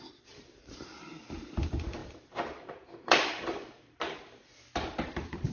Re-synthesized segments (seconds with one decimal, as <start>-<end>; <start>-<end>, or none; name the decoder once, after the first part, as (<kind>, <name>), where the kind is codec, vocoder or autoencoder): 0.0-0.7 (vocoder, BigVGAN v2); 1.2-4.5; 5.1-5.5